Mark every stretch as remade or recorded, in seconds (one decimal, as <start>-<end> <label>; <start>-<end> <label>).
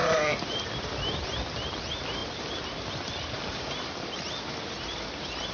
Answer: 0.0-0.7 remade; 0.7-5.5 recorded